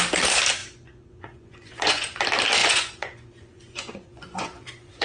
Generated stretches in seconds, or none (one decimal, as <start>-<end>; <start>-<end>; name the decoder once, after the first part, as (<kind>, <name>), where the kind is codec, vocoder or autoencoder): 0.6-2.2 (vocoder, Vocos); 2.6-5.0